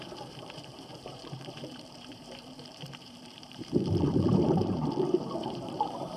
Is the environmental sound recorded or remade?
remade